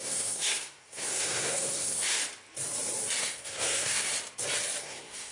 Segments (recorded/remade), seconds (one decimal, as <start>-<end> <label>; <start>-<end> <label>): 0.0-2.2 remade; 2.2-3.2 recorded; 3.2-4.1 remade; 4.1-4.8 recorded; 4.8-5.3 remade